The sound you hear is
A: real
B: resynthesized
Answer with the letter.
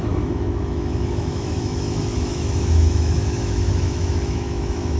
B